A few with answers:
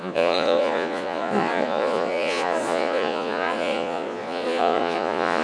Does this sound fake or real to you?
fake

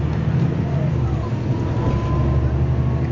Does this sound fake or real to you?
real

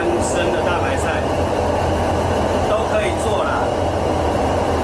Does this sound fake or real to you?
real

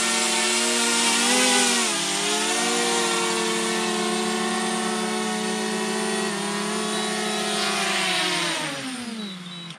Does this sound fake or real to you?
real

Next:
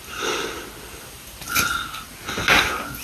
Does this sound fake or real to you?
real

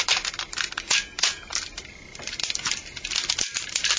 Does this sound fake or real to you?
real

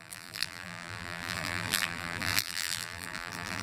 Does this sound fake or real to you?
fake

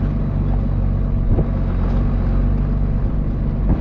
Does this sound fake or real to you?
real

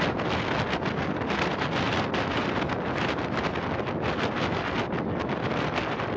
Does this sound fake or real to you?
real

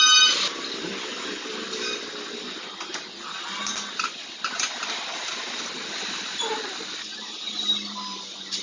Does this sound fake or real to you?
real